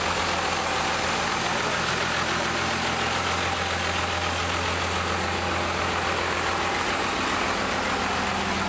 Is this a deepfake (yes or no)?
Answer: no